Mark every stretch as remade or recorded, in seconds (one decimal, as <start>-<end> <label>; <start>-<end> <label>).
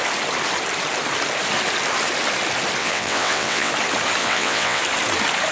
0.0-2.8 recorded; 2.8-3.7 remade; 3.7-4.2 recorded; 4.2-4.8 remade; 4.8-5.5 recorded